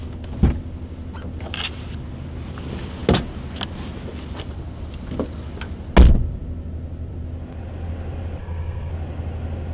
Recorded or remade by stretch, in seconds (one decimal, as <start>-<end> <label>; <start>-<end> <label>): 0.0-8.4 recorded; 8.4-8.9 remade; 8.9-9.7 recorded